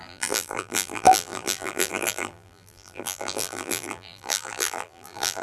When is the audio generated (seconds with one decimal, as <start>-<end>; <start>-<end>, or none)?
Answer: 0.0-5.4